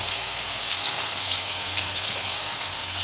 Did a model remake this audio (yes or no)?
yes